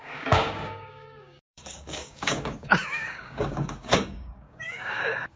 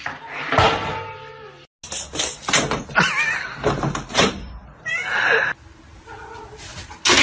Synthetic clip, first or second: first